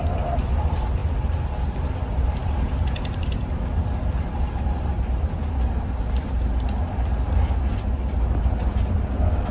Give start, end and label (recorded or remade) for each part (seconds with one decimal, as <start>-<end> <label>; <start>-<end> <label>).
0.0-9.5 recorded

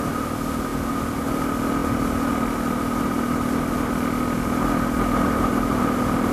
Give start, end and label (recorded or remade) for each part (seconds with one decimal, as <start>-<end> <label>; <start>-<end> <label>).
0.0-6.3 recorded

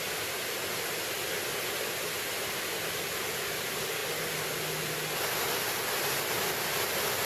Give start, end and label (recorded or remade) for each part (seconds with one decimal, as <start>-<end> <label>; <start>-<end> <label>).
0.0-7.2 recorded

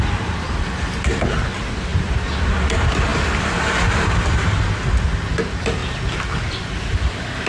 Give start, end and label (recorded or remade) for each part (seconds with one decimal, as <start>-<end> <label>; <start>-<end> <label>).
0.0-5.8 remade; 5.8-6.6 recorded; 6.6-7.5 remade

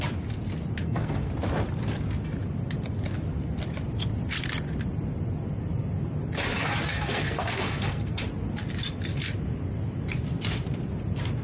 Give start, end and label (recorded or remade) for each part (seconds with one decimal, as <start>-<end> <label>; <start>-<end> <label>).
0.0-0.8 recorded; 0.8-1.3 remade; 1.3-6.9 recorded; 6.9-8.2 remade; 8.2-11.4 recorded

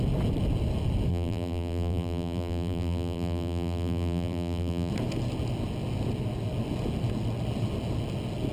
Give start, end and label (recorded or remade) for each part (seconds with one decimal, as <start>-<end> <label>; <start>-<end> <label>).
0.0-1.1 recorded; 1.1-4.9 remade; 4.9-8.5 recorded

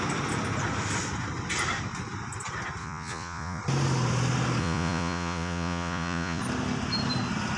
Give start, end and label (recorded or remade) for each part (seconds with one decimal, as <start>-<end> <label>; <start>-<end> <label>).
0.0-2.8 recorded; 2.8-3.6 remade; 3.6-4.6 recorded; 4.6-6.4 remade; 6.4-7.6 recorded

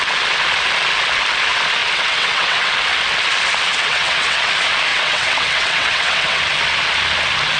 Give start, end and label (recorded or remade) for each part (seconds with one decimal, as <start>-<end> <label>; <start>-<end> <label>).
0.0-1.8 recorded; 1.8-2.7 remade; 2.7-3.7 recorded; 3.7-4.5 remade; 4.5-4.9 recorded; 4.9-6.4 remade; 6.4-7.6 recorded